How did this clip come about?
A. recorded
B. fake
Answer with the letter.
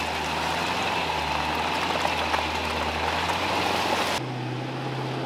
A